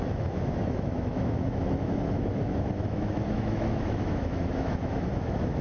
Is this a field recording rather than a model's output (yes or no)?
no